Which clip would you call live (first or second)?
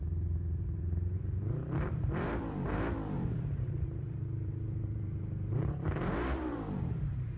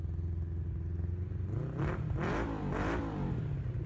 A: second